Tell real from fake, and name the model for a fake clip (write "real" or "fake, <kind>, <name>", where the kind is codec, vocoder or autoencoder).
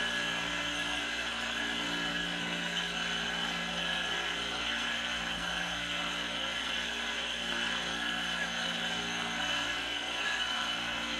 fake, codec, SNAC